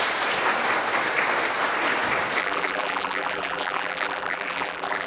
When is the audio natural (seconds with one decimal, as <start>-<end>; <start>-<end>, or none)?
0.0-2.4